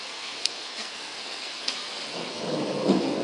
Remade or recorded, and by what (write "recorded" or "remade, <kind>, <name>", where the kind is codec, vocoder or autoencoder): remade, codec, SNAC